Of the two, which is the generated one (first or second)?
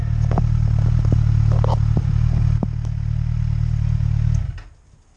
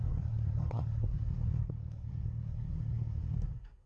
second